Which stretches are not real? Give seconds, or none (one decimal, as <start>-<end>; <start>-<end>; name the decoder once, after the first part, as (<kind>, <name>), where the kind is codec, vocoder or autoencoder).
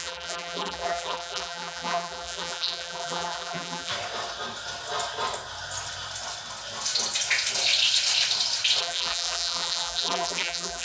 0.0-3.9 (vocoder, BigVGAN v2); 8.8-10.8